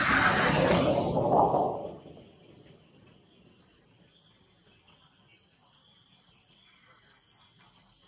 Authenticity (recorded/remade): recorded